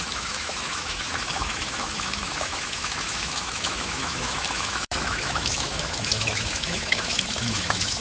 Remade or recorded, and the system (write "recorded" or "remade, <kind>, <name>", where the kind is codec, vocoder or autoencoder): remade, autoencoder, DAC-VAE